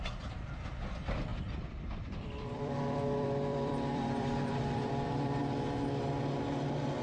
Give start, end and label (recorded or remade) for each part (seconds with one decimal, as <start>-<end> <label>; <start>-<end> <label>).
0.0-1.3 recorded; 1.3-5.4 remade; 5.4-7.0 recorded

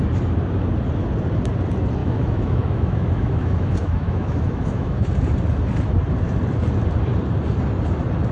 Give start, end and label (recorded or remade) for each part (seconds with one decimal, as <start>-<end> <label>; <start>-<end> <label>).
0.0-2.0 recorded; 2.0-5.1 remade; 5.1-8.3 recorded